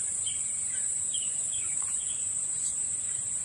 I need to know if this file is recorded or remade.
remade